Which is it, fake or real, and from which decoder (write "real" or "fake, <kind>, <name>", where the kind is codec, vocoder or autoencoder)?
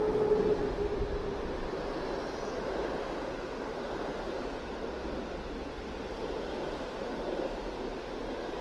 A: real